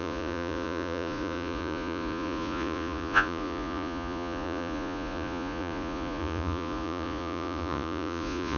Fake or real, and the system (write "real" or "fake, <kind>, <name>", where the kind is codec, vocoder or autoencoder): fake, vocoder, Vocos